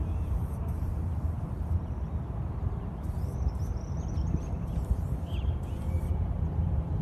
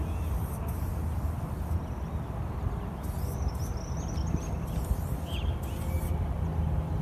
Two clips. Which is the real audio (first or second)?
second